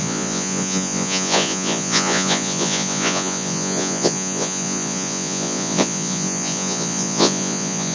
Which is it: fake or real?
fake